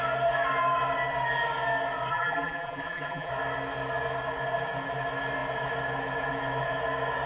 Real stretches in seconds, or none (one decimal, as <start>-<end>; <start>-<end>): 0.0-2.1; 3.3-7.3